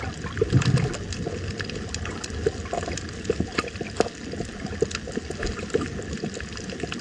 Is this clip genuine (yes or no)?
yes